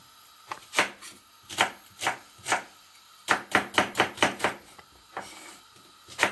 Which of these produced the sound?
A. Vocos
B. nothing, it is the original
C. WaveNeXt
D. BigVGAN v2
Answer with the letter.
B